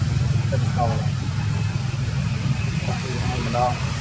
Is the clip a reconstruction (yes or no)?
no